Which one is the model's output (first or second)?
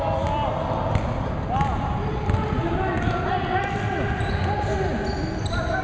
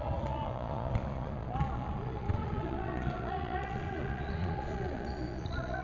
second